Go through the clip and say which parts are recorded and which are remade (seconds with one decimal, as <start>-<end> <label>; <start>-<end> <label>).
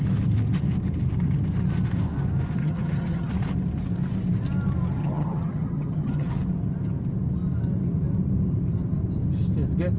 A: 0.0-2.6 recorded; 2.6-3.3 remade; 3.3-5.0 recorded; 5.0-6.3 remade; 6.3-10.0 recorded